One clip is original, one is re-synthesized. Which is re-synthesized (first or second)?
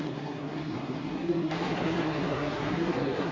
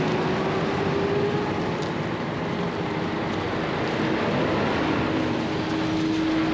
first